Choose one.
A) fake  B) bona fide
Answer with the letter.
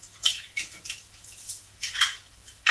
A